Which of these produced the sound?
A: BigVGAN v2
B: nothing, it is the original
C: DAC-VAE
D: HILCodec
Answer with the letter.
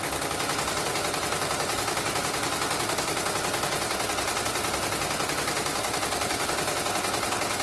B